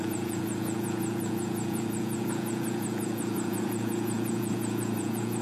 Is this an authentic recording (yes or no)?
no